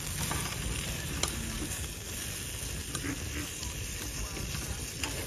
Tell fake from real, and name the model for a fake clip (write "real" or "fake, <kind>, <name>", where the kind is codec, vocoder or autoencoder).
real